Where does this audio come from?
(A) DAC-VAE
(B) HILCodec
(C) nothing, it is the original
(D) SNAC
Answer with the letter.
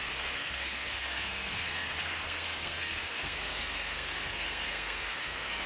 D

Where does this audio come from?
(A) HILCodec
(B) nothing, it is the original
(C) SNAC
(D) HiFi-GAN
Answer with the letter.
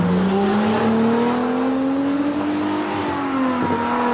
B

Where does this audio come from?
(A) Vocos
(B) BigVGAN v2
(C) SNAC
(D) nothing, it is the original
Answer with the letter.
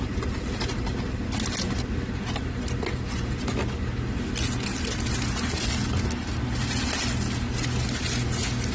D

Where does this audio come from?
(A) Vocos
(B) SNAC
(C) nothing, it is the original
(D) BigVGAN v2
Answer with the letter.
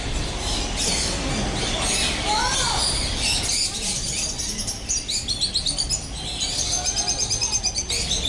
C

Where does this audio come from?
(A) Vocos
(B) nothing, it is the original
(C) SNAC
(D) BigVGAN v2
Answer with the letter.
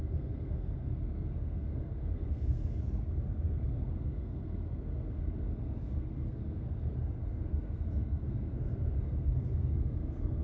C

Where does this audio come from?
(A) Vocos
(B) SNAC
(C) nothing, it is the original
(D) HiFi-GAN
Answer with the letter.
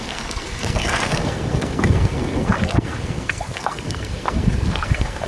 B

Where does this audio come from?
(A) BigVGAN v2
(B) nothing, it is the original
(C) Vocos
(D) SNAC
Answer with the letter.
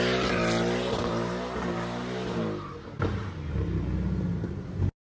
B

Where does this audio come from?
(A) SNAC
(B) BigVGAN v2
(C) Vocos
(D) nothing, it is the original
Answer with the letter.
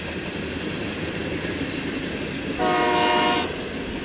D